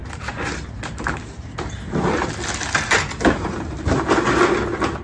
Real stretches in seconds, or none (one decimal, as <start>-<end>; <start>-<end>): 0.0-5.0